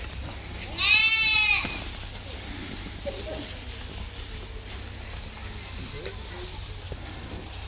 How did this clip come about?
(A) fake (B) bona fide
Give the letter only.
B